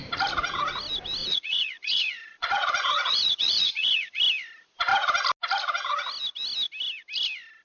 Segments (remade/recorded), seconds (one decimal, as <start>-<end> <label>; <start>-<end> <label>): 0.0-1.2 recorded; 1.2-4.2 remade; 4.2-7.6 recorded

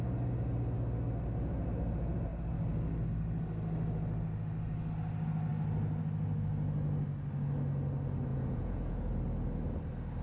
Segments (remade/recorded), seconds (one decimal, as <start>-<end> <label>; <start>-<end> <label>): 0.0-8.3 recorded; 8.3-9.0 remade; 9.0-10.2 recorded

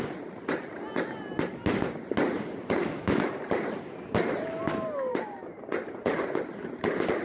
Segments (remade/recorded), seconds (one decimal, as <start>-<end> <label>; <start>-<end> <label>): 0.0-2.8 recorded; 2.8-3.3 remade; 3.3-7.2 recorded

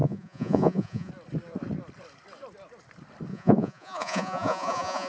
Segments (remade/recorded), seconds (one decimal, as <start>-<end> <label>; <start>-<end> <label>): 0.0-1.1 remade; 1.1-3.3 recorded; 3.3-5.1 remade